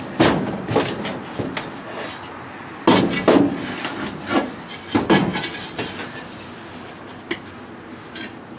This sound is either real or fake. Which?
real